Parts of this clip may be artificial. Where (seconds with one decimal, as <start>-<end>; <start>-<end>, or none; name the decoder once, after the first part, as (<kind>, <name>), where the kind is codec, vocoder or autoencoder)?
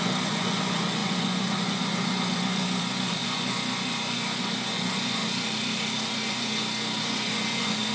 0.0-5.2 (vocoder, Vocos); 6.1-7.9